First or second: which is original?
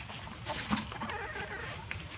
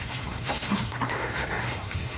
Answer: first